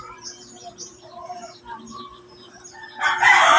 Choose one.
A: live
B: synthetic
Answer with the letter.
B